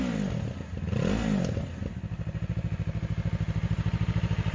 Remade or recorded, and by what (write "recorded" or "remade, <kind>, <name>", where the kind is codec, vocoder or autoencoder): recorded